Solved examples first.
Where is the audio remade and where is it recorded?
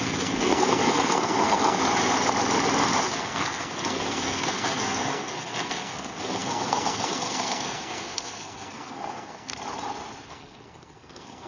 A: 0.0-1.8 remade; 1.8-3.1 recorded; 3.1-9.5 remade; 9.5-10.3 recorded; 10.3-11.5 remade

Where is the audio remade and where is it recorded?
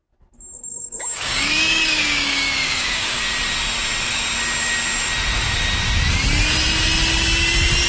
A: 0.0-0.7 recorded; 0.7-3.2 remade; 3.2-7.9 recorded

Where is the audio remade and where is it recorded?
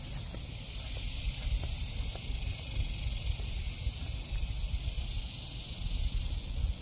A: 0.0-6.8 recorded